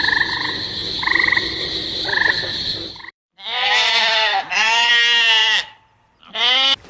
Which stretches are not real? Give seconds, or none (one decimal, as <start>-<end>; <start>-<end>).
0.8-4.9; 5.4-6.9